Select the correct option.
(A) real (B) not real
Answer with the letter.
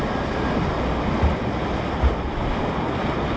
A